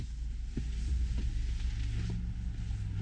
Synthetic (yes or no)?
no